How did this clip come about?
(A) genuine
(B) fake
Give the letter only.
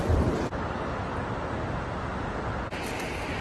A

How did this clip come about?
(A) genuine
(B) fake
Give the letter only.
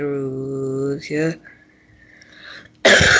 A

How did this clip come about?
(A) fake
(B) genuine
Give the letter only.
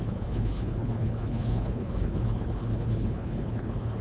A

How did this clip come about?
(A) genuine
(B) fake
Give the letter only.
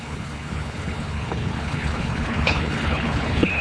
B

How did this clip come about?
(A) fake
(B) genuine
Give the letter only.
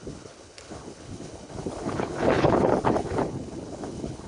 A